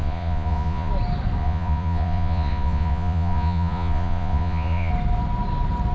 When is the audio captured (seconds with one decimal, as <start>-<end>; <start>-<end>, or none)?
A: 0.9-1.4; 4.9-5.9